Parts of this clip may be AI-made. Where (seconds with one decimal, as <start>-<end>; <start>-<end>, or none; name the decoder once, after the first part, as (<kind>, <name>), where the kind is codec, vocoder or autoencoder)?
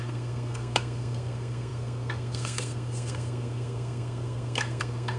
0.0-5.2 (codec, SNAC)